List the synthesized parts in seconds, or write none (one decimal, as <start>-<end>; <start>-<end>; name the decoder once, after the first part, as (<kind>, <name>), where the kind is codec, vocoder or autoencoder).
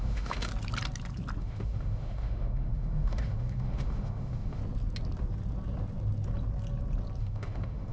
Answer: 0.0-0.5 (autoencoder, DAC-VAE); 1.4-4.6; 7.2-7.9